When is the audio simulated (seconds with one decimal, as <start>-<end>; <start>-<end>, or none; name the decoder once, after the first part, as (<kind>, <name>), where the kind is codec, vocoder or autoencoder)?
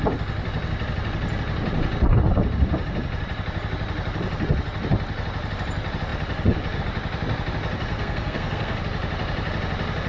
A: 7.9-8.8 (codec, SNAC)